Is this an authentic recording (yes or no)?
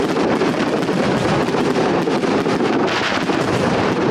no